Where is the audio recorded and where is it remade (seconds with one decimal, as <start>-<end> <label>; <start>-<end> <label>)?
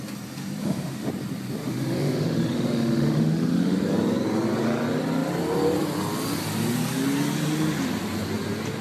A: 0.0-0.6 recorded; 0.6-1.1 remade; 1.1-1.6 recorded; 1.6-3.8 remade; 3.8-8.8 recorded